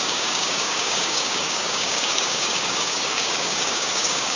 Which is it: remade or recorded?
remade